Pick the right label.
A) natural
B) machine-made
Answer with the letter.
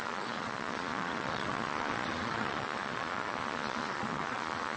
B